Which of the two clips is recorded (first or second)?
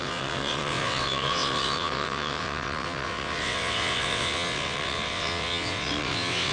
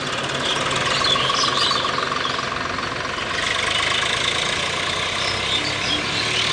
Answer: second